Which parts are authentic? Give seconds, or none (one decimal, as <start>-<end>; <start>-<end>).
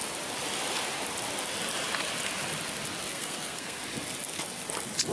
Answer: 0.0-3.1; 3.8-5.1